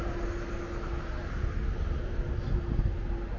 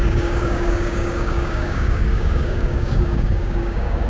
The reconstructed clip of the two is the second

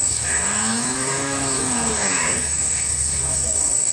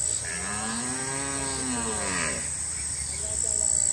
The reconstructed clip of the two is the first